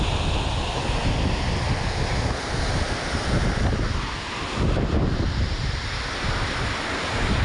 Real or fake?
real